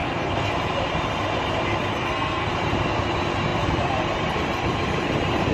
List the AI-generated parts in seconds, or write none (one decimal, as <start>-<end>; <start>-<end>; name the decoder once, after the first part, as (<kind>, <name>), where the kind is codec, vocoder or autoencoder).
0.0-0.5 (codec, SNAC); 1.9-2.5